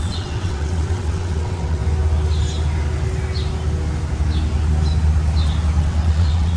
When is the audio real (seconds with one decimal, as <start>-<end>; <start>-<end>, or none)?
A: 1.8-5.8